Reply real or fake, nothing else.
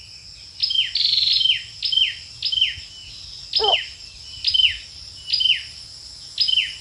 real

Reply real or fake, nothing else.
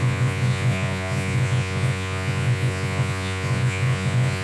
fake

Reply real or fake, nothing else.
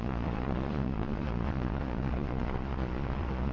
fake